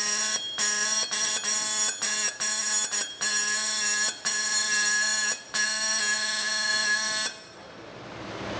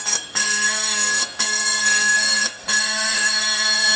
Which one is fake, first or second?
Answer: second